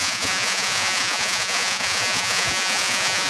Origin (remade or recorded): remade